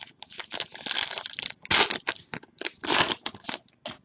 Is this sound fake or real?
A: real